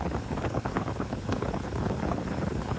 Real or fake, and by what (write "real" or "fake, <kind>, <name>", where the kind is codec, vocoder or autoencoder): fake, codec, HILCodec